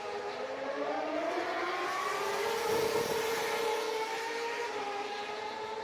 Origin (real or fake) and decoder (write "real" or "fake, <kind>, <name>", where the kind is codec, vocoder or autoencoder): fake, vocoder, BigVGAN v2